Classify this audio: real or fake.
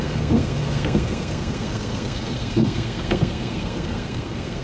fake